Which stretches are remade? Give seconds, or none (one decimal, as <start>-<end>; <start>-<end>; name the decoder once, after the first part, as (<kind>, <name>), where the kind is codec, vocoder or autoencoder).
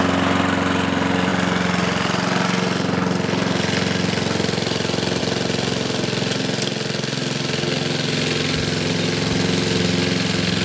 none